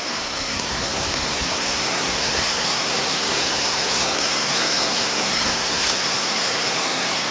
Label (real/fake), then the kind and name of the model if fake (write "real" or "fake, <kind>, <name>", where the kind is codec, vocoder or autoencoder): fake, codec, SNAC